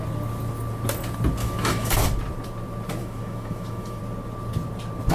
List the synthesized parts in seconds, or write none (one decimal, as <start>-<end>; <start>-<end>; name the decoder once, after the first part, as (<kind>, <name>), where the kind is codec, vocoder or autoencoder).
1.4-1.9 (autoencoder, DAC-VAE); 3.0-4.0